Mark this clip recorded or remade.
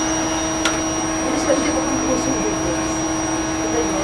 recorded